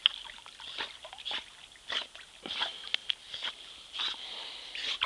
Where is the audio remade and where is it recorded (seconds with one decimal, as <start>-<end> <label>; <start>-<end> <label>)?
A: 0.0-5.1 recorded